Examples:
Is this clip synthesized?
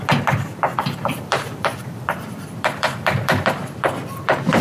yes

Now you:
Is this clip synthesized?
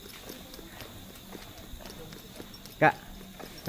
no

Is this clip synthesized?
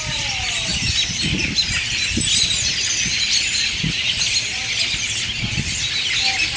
no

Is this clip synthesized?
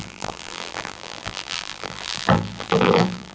yes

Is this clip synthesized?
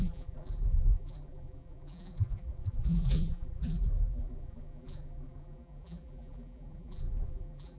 yes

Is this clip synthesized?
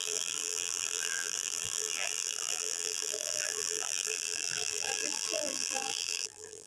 yes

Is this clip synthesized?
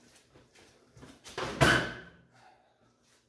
yes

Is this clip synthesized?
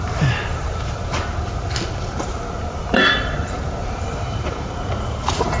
yes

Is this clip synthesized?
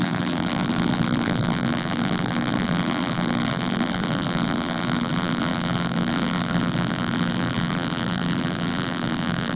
yes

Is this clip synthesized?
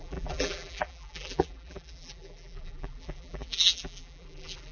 yes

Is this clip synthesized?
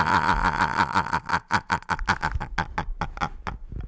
no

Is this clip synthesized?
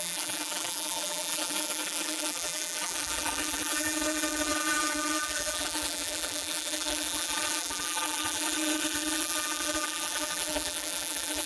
yes